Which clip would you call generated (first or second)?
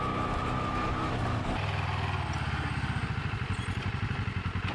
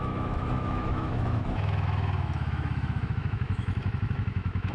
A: second